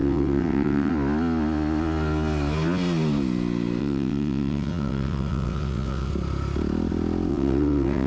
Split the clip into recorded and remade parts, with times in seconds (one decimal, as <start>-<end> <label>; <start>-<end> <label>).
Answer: 0.0-0.9 remade; 0.9-3.8 recorded; 3.8-6.1 remade; 6.1-7.3 recorded; 7.3-8.1 remade